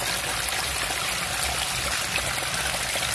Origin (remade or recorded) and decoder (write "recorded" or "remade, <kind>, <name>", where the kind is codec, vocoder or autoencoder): recorded